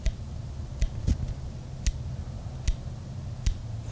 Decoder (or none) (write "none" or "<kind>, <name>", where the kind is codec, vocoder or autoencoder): none